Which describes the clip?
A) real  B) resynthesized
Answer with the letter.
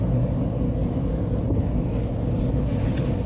A